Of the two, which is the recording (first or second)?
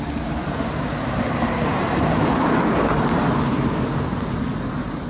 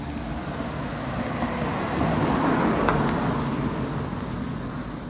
second